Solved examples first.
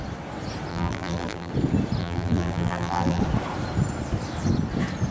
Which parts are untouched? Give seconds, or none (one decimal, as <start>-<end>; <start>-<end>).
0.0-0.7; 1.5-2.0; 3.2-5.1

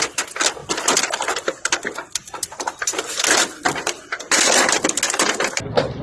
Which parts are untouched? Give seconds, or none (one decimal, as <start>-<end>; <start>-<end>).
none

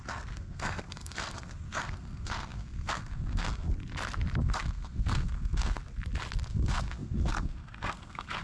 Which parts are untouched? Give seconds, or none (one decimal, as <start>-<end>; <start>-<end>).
3.7-4.4; 5.8-6.5

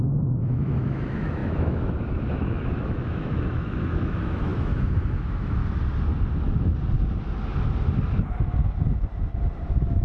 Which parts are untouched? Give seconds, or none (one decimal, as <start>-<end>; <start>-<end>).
5.6-9.6

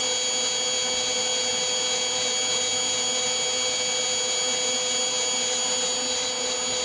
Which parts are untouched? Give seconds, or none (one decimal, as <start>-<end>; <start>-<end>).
0.0-6.8

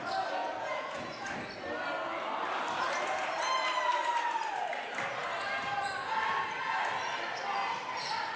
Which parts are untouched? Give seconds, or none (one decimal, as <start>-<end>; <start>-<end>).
0.0-0.4; 1.3-8.4

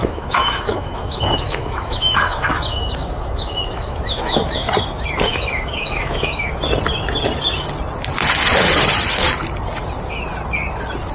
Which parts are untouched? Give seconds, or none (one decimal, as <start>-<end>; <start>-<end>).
4.7-5.3; 6.5-11.1